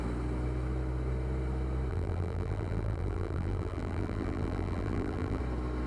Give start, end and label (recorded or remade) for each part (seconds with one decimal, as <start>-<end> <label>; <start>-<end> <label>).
0.0-1.9 recorded; 1.9-5.4 remade; 5.4-5.9 recorded